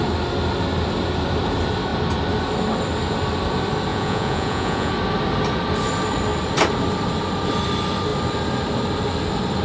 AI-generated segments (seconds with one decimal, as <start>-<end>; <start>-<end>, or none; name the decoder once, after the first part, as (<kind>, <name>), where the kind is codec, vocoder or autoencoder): 3.9-4.9 (vocoder, Vocos)

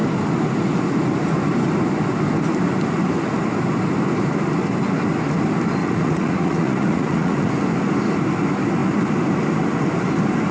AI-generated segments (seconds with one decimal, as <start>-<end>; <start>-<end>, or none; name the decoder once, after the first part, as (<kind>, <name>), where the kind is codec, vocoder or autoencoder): 5.8-7.5 (vocoder, Vocos)

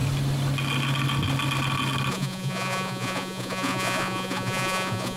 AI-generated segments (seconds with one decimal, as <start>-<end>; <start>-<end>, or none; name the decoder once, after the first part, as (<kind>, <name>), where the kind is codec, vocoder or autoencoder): 2.1-5.2 (vocoder, Vocos)

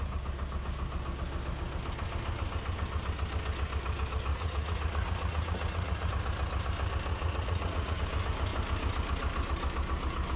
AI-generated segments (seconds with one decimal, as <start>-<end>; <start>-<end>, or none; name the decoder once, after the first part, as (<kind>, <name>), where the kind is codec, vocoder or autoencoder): 4.3-6.1 (vocoder, Vocos); 7.1-8.0

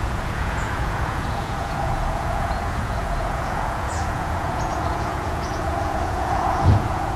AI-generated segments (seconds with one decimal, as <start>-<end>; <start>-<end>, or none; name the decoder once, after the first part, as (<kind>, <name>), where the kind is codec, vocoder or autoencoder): 0.0-7.2 (vocoder, Vocos)

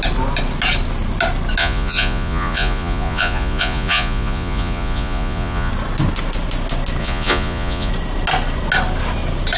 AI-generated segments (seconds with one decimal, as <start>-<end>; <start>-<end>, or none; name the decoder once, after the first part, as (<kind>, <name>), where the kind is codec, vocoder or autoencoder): 1.6-5.7 (vocoder, Vocos); 7.0-7.9

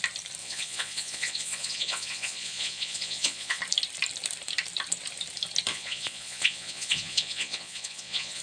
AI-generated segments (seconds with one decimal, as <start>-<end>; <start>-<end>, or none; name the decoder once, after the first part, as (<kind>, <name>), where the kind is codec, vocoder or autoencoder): 0.4-3.6 (vocoder, Vocos); 5.7-8.4